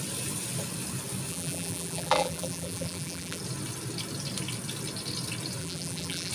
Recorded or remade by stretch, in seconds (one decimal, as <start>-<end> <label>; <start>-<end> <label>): 0.0-1.3 recorded; 1.3-3.4 remade; 3.4-5.6 recorded; 5.6-6.3 remade